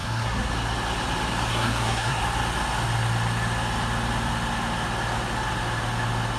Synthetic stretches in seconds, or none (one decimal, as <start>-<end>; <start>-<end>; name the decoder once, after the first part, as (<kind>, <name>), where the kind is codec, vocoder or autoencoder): 0.0-0.5 (codec, SNAC); 1.5-2.2